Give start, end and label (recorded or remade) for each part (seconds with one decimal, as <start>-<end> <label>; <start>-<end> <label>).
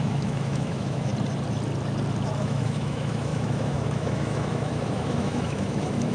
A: 0.0-1.1 remade; 1.1-2.4 recorded; 2.4-6.1 remade